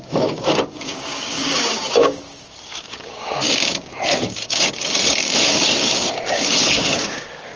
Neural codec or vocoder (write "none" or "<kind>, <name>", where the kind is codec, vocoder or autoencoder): codec, DAC